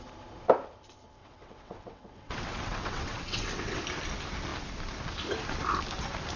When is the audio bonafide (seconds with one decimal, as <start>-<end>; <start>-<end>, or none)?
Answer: 0.0-1.2; 3.8-6.4